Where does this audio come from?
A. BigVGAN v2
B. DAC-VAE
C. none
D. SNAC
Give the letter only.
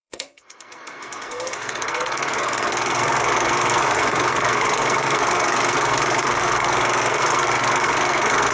D